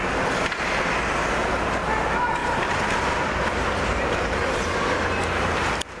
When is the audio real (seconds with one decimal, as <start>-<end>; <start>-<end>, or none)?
0.0-2.0